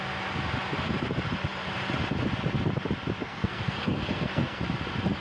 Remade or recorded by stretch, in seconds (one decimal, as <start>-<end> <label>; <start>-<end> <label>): 0.0-3.2 recorded; 3.2-4.6 remade; 4.6-5.2 recorded